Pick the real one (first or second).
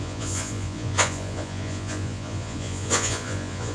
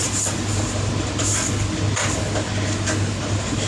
second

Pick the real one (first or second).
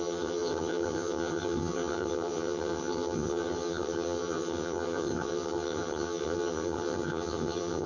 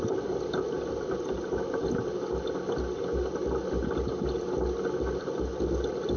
second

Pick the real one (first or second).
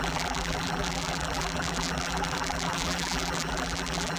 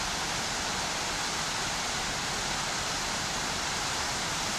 second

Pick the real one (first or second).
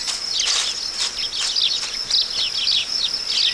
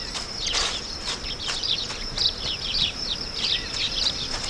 first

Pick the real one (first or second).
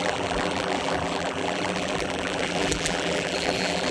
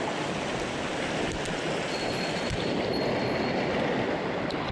second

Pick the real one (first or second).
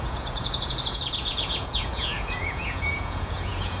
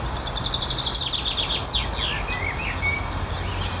second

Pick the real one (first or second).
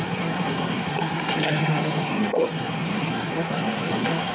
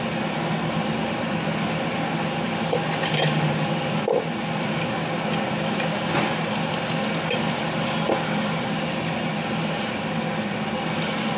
second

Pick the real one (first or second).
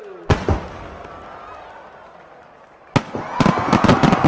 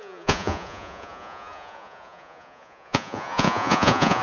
first